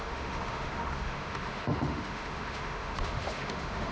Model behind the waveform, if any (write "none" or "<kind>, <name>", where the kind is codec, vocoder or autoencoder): autoencoder, DAC-VAE